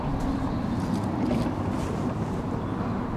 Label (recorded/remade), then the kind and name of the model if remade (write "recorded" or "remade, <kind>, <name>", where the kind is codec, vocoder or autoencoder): recorded